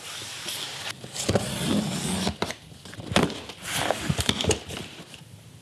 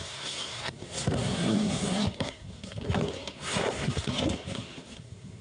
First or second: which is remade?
second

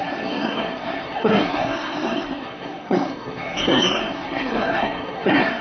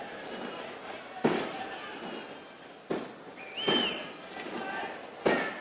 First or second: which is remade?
first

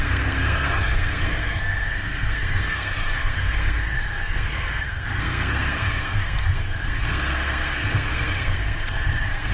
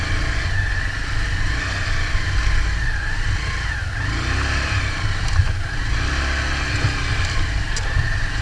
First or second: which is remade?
first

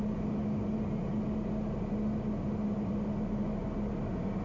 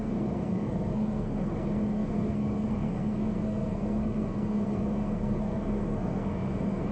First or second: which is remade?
second